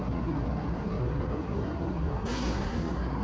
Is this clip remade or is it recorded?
remade